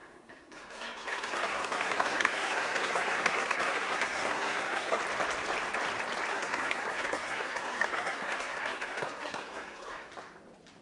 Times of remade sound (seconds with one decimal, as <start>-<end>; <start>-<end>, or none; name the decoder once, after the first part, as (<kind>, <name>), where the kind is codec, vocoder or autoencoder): 0.0-5.0 (codec, SNAC); 6.3-10.1